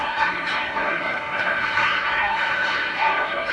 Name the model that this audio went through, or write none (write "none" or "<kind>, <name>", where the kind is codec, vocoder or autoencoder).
codec, SNAC